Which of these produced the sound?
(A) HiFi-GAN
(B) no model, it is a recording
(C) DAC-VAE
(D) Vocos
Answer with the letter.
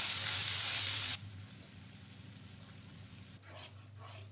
B